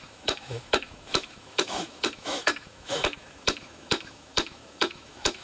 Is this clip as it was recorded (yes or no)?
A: no